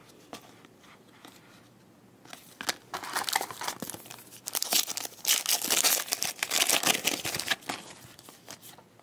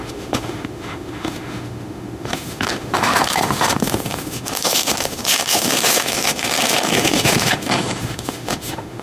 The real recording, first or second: first